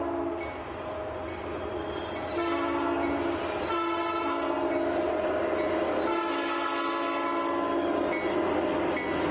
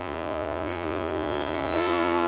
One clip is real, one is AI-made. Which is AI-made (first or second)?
second